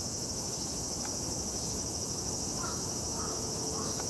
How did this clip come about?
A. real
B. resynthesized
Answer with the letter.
B